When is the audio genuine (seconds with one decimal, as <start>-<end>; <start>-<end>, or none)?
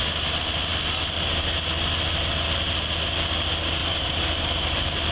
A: 0.0-3.8